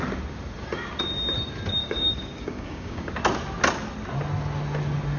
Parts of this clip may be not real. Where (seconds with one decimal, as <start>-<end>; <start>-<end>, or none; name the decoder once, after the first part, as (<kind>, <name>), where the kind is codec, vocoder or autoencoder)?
1.8-3.1 (codec, DAC)